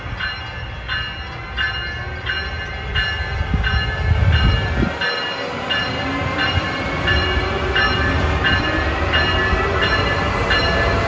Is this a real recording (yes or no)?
yes